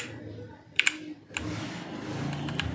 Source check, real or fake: real